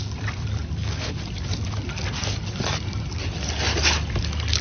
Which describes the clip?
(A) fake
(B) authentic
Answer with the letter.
B